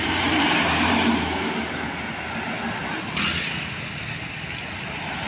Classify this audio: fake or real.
real